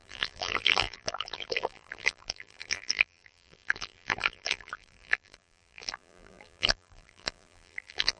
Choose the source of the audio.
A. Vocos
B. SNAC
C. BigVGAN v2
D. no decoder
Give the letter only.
C